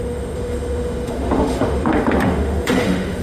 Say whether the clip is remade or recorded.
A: remade